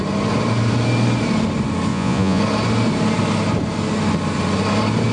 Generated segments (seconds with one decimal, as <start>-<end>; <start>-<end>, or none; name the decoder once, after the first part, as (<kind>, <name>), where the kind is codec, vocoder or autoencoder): 1.9-2.4 (vocoder, Vocos)